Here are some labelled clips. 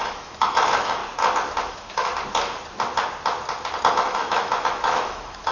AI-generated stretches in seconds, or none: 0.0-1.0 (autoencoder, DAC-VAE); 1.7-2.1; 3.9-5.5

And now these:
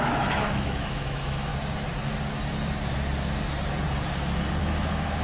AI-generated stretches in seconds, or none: 0.0-1.5 (autoencoder, DAC-VAE); 4.6-5.2

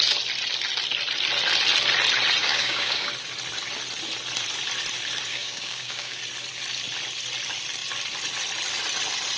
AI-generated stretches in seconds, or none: 2.4-3.1 (codec, DAC); 5.3-6.2

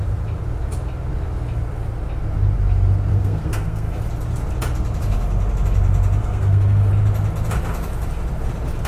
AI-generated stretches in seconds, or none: 3.1-4.0 (codec, SNAC); 6.2-6.9

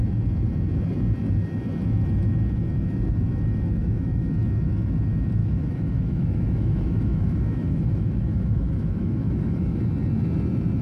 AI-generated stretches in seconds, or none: 3.8-4.3 (autoencoder, DAC-VAE); 5.4-9.8

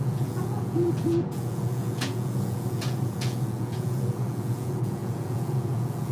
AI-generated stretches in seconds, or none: 0.0-6.1 (vocoder, Vocos)

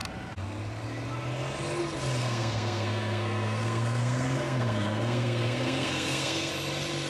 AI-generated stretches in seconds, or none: 2.2-6.5 (codec, SNAC)